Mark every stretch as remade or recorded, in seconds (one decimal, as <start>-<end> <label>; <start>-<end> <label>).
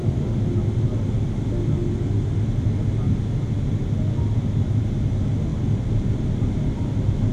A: 0.0-7.3 recorded